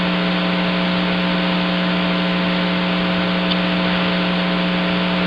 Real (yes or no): yes